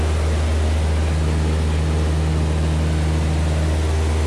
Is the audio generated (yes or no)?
no